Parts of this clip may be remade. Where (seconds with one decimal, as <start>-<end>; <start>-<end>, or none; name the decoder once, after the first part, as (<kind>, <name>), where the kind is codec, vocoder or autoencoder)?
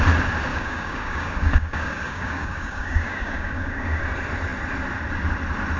0.5-4.0 (codec, DAC)